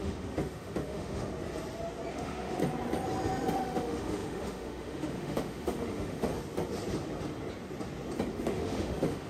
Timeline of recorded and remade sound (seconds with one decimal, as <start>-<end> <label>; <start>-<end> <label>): 0.0-1.3 remade; 1.3-2.1 recorded; 2.1-2.6 remade; 2.6-3.5 recorded; 3.5-6.3 remade; 6.3-8.3 recorded; 8.3-9.3 remade